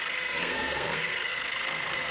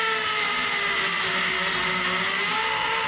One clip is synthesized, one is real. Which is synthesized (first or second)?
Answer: first